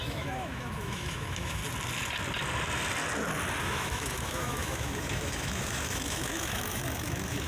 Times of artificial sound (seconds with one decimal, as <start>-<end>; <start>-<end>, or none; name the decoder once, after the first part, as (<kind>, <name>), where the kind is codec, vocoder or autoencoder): 0.0-1.6 (autoencoder, DAC-VAE); 3.6-7.5